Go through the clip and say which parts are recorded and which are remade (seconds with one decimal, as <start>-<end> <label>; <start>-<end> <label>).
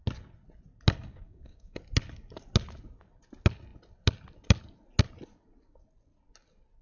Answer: 0.0-1.1 recorded; 1.1-1.8 remade; 1.8-6.8 recorded